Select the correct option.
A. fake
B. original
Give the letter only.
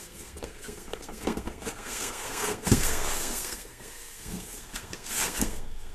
A